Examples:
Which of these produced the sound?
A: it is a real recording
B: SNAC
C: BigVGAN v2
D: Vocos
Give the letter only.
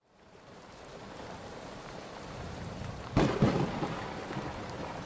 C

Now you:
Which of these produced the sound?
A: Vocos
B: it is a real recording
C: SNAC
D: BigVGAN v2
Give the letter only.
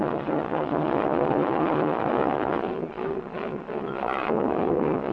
A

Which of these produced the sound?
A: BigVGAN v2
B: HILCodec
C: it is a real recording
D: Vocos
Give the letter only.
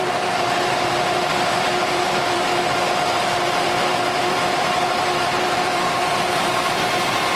A